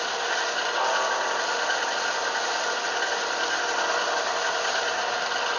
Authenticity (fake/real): real